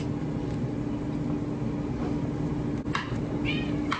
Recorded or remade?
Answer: recorded